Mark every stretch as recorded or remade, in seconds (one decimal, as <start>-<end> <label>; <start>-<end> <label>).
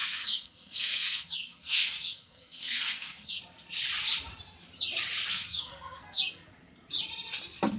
0.0-3.4 remade; 3.4-5.3 recorded; 5.3-6.2 remade; 6.2-7.8 recorded